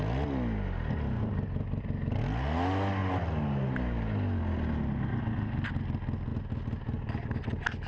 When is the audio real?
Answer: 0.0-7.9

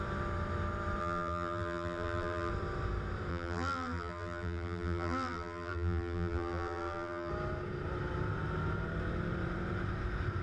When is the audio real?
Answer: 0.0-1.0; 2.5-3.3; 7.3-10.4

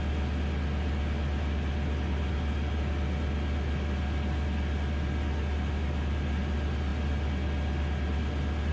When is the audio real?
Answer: 0.0-8.7

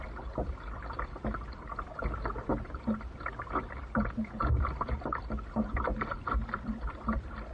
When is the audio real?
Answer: 2.5-3.7

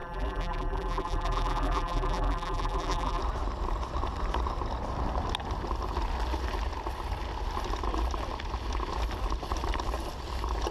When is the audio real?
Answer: 3.2-10.7

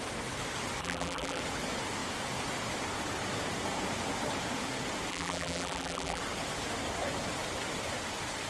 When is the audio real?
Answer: 0.0-0.8; 1.4-5.1; 6.2-8.5